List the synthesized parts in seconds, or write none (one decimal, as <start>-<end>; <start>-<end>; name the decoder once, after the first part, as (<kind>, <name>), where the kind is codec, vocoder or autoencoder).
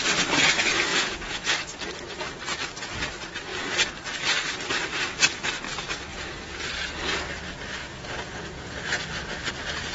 0.9-1.5 (vocoder, Vocos); 6.1-6.7; 7.8-9.0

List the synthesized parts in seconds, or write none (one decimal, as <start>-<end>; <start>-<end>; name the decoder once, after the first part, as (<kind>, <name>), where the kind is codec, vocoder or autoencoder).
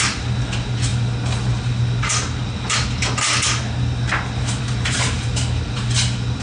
none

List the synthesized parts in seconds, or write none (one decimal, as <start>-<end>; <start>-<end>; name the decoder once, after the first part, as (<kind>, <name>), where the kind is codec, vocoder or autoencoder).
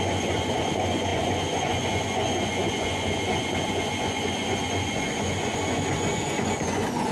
0.0-7.1 (vocoder, Vocos)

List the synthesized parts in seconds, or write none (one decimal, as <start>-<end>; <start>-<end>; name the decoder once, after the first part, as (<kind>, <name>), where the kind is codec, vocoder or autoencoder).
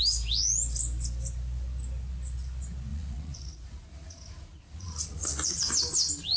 2.9-5.7 (vocoder, Vocos)